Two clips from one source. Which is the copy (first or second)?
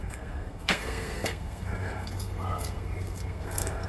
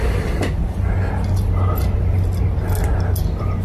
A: first